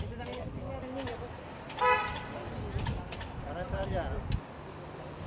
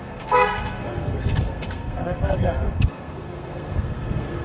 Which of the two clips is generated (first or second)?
second